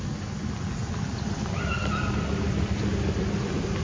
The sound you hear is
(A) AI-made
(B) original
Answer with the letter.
B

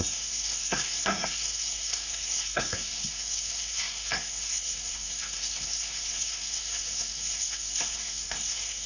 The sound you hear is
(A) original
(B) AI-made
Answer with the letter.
B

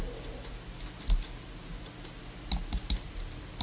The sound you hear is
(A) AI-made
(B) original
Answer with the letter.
B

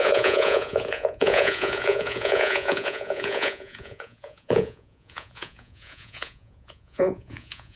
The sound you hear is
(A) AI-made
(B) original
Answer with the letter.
A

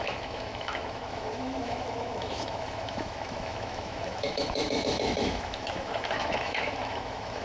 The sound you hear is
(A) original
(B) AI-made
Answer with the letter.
B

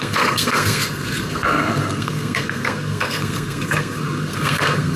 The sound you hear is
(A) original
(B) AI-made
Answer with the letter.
B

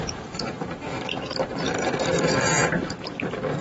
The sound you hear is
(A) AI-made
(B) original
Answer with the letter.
A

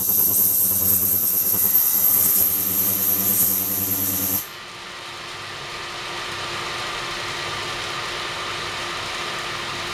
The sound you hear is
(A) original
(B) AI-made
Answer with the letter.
A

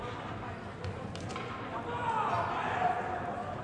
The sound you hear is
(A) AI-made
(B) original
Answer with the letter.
B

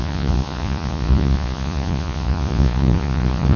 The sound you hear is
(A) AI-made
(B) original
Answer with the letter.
A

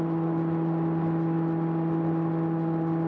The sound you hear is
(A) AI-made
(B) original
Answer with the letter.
B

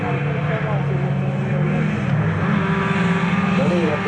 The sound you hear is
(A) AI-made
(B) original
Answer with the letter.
B